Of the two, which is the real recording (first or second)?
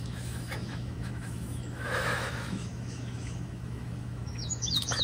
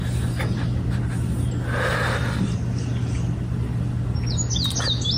second